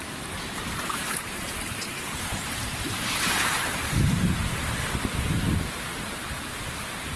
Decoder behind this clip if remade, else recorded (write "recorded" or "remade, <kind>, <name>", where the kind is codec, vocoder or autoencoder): remade, vocoder, BigVGAN v2